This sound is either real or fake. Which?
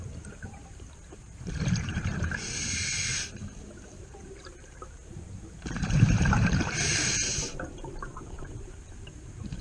fake